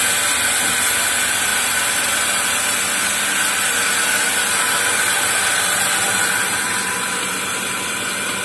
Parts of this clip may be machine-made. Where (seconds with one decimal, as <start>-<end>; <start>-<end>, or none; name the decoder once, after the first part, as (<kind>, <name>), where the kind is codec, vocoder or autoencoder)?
1.5-2.6 (vocoder, BigVGAN v2)